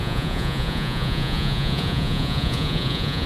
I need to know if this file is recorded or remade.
remade